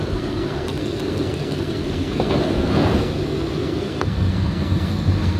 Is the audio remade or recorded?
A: remade